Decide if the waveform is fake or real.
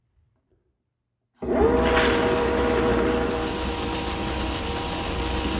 real